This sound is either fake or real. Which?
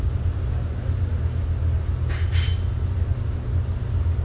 real